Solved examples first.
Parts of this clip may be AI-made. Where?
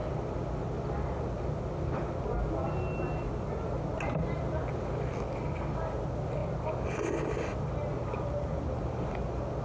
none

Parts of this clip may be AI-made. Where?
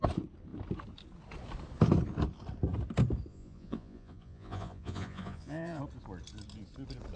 3.3-5.8 (vocoder, Vocos)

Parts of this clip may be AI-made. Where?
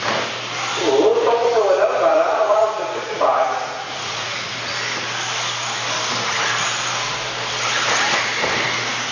2.1-4.5 (vocoder, Vocos)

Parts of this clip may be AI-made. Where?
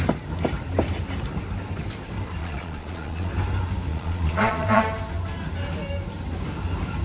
2.4-3.3 (vocoder, Vocos); 3.9-4.8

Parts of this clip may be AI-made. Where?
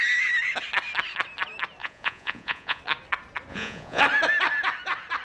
1.8-2.8 (vocoder, Vocos); 3.5-4.0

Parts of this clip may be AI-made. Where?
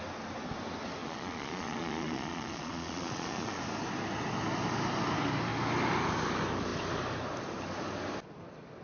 1.0-3.6 (vocoder, Vocos)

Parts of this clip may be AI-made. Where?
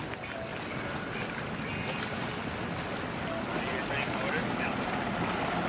none